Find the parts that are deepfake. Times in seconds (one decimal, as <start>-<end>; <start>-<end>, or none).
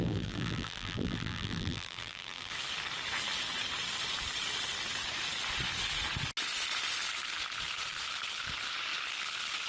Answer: 0.0-2.5